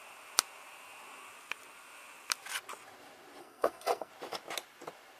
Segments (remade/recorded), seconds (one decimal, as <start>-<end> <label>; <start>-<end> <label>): 0.0-3.4 recorded; 3.4-4.1 remade; 4.1-5.2 recorded